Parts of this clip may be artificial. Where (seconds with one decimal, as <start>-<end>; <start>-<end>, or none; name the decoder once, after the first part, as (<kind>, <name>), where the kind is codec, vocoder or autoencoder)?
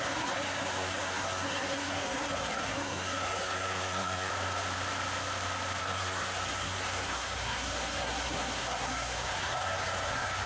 0.0-4.3 (codec, SNAC); 5.8-10.5